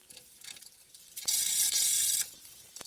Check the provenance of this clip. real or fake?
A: fake